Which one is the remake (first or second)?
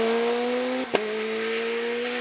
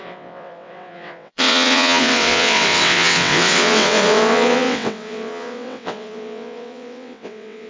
second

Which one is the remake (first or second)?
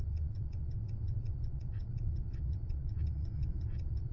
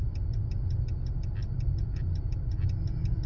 first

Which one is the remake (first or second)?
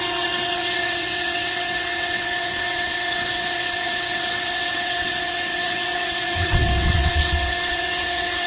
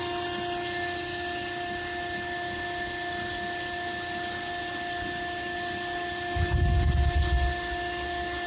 first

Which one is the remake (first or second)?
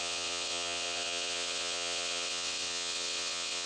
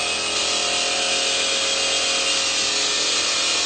first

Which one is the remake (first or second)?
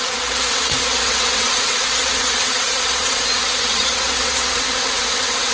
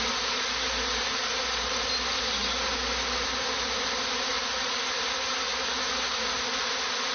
first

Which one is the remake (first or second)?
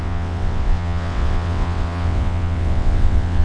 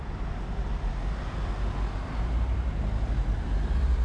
first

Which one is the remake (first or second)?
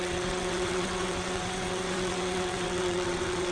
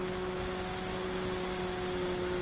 first